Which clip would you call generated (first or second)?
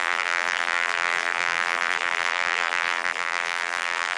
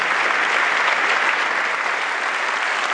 first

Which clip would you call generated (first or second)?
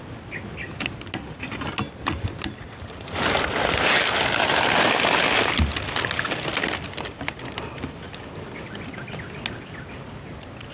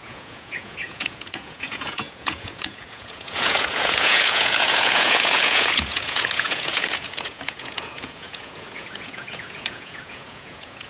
second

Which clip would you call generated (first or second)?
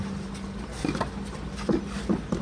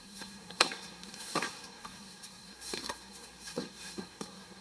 second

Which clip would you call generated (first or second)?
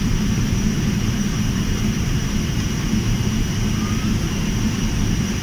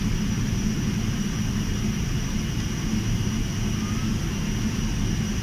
first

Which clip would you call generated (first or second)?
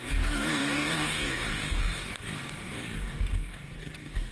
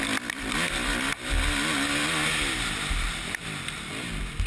first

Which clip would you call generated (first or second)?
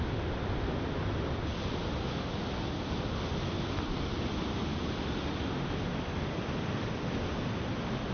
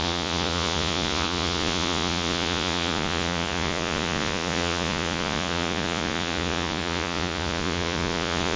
second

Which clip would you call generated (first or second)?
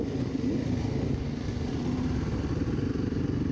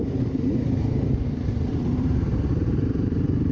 second